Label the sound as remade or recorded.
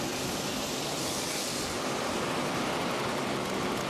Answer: recorded